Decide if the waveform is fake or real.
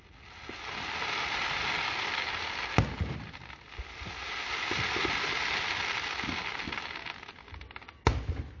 real